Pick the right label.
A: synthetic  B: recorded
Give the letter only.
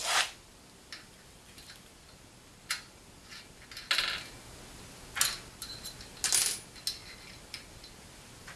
B